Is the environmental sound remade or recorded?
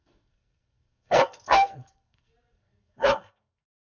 remade